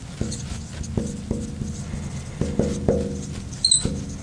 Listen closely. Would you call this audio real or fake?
real